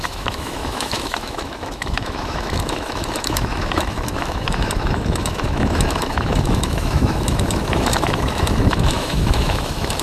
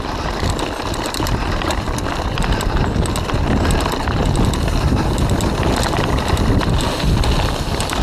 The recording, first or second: second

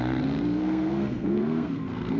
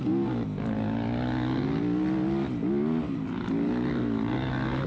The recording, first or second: second